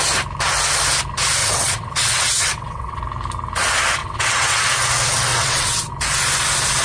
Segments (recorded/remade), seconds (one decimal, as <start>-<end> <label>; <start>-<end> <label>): 0.0-1.4 recorded; 1.4-3.0 remade; 3.0-4.0 recorded; 4.0-4.6 remade; 4.6-5.3 recorded; 5.3-5.9 remade; 5.9-6.8 recorded